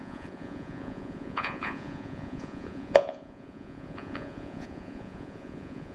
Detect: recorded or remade remade